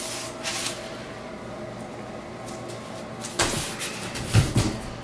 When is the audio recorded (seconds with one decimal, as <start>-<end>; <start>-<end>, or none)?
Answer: 0.0-5.0